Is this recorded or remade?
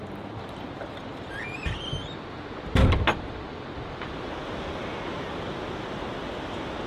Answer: recorded